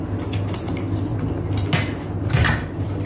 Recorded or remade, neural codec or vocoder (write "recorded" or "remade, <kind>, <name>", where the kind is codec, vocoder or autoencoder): recorded